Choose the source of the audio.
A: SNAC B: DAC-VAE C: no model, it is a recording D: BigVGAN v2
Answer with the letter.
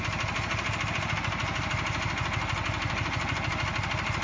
C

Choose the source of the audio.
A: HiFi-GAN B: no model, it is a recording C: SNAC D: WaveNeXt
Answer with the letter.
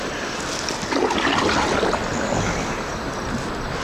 B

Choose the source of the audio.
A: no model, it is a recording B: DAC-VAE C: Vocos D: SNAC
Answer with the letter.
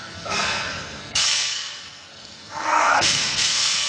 D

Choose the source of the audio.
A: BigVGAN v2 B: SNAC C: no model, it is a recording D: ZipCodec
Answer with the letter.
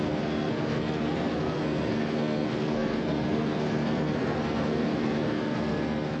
B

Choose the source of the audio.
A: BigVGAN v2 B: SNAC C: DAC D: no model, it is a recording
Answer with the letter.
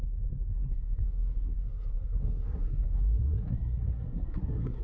B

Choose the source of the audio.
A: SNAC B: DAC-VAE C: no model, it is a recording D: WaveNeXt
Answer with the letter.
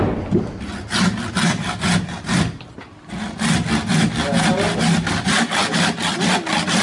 C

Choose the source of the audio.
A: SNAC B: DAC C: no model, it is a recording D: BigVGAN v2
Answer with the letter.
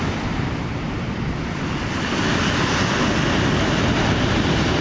C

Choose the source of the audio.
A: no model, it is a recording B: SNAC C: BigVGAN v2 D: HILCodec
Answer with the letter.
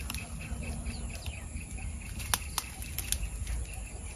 A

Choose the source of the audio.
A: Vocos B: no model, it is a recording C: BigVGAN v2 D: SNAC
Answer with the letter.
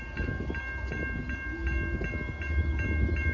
B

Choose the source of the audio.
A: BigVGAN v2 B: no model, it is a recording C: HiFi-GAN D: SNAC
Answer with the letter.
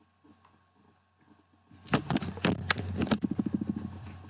B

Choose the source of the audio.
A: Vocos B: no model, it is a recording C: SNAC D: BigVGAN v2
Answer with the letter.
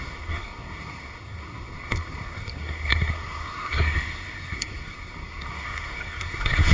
C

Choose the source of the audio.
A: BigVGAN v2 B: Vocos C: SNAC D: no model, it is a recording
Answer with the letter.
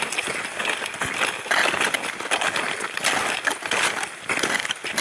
D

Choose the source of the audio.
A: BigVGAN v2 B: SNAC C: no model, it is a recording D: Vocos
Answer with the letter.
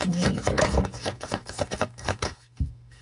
B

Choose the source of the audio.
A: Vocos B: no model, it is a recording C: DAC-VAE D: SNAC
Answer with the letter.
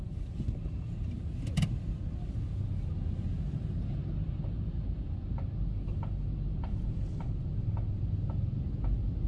B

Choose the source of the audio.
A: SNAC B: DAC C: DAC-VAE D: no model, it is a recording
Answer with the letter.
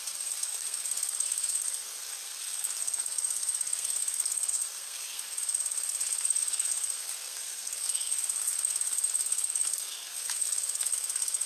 A